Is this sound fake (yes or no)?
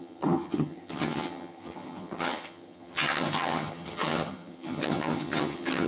yes